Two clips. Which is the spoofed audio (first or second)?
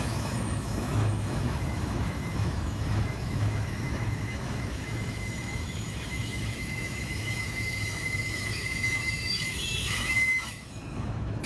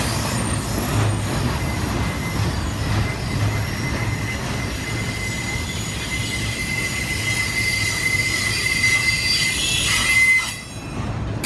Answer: first